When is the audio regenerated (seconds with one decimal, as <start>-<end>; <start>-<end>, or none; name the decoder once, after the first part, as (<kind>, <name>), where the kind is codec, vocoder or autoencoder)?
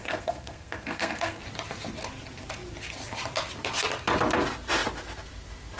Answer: 0.0-1.4 (codec, SNAC)